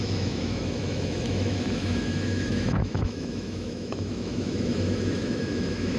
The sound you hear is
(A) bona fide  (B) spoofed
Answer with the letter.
B